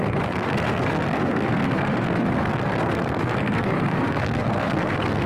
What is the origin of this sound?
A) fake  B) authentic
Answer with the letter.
A